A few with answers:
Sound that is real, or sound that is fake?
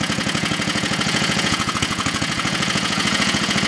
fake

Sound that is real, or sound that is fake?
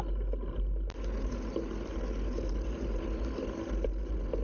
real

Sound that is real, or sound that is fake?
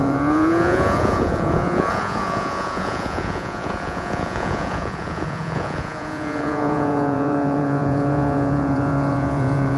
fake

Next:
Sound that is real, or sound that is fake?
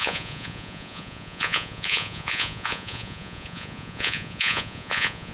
fake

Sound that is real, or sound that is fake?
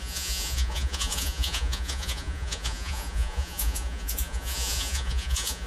fake